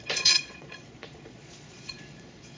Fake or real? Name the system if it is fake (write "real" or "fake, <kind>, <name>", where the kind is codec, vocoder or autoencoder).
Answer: fake, vocoder, Vocos